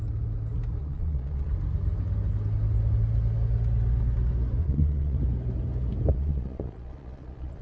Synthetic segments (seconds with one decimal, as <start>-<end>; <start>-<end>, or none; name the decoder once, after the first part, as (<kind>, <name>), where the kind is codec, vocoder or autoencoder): 0.8-1.5 (vocoder, Vocos); 4.6-5.2; 6.1-7.6